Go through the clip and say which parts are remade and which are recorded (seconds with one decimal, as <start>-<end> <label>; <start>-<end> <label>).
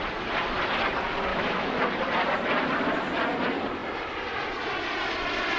0.0-1.3 recorded; 1.3-1.8 remade; 1.8-5.6 recorded